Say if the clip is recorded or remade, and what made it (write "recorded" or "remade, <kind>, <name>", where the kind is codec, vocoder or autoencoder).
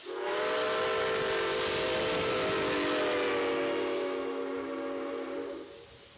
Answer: recorded